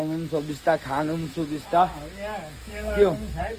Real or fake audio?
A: fake